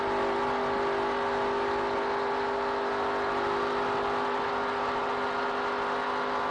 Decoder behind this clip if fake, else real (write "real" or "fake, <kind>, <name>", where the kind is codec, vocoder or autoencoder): real